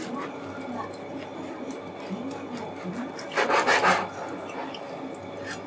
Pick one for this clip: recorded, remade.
recorded